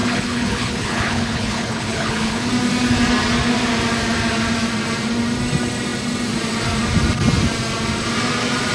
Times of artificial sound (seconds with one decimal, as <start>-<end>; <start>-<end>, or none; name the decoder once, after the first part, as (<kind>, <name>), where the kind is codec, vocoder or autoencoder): 0.0-2.5 (codec, HILCodec)